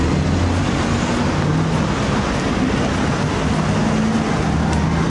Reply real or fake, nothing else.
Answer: real